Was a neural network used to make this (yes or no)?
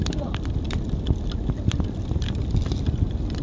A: no